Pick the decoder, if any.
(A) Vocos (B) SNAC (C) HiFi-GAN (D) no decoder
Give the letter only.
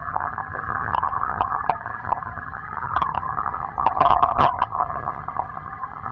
C